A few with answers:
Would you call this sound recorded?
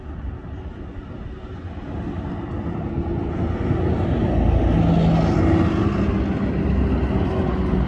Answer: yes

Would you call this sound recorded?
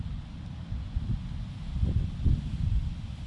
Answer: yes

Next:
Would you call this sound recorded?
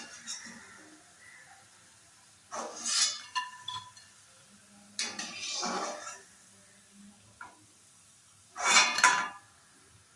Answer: yes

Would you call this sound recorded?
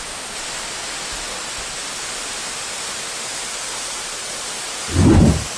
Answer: yes